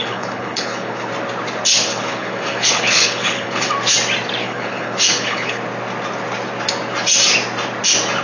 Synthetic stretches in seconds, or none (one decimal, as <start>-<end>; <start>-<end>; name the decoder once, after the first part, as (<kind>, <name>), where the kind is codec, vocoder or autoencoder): 0.0-1.1 (codec, HILCodec); 1.9-3.7; 4.4-5.6